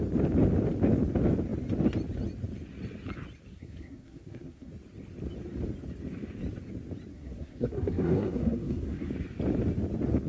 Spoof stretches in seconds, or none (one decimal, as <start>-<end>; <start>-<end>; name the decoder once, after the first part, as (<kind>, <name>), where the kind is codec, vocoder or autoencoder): 3.5-4.7 (codec, SNAC); 7.1-9.1